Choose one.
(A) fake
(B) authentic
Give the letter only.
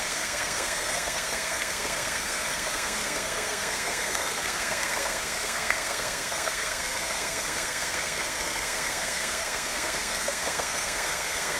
A